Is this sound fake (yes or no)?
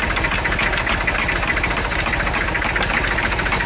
no